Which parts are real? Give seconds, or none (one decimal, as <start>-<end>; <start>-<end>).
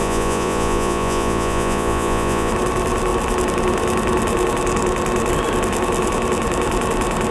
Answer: 2.5-7.3